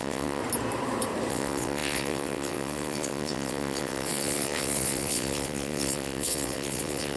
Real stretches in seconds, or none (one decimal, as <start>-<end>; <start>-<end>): 0.4-1.3